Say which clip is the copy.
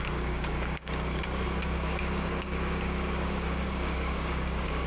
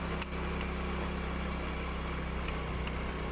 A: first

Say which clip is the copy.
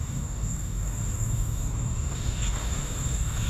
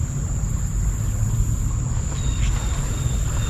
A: first